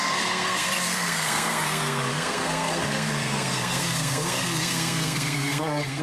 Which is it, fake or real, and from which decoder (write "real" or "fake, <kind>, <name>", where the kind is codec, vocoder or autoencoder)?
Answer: fake, codec, SNAC